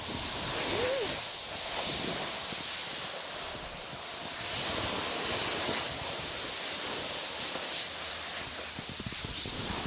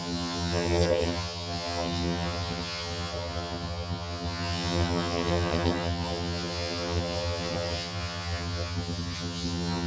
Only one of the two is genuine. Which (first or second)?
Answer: first